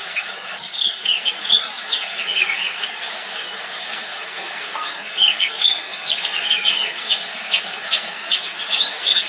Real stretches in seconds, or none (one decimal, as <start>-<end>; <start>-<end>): none